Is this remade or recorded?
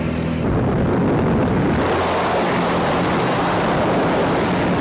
recorded